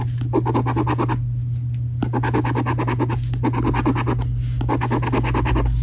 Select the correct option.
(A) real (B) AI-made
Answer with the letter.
A